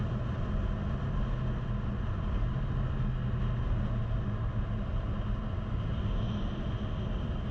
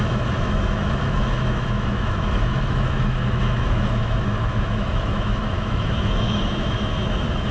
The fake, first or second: second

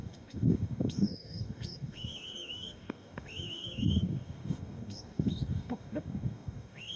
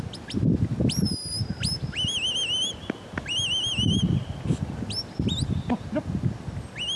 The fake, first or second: first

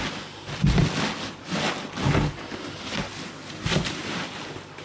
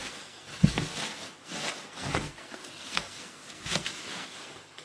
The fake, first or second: second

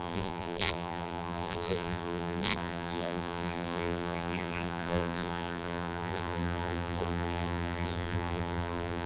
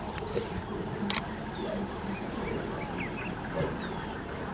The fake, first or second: first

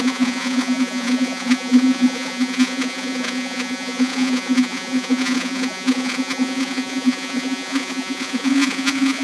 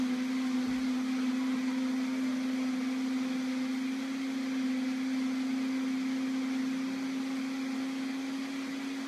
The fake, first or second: first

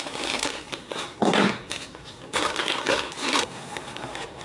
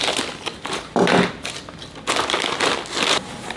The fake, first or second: first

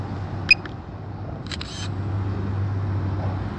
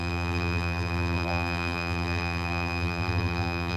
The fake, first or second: second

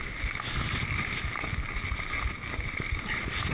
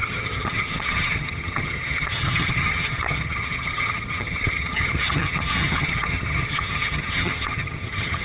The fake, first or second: second